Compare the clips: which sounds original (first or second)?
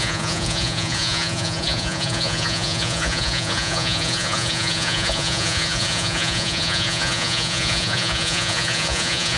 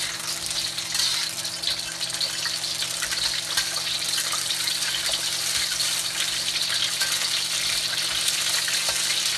second